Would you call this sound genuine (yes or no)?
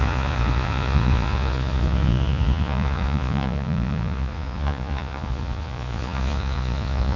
no